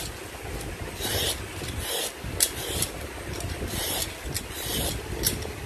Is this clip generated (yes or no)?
no